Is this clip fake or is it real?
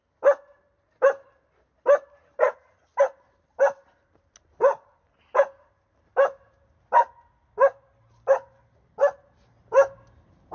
real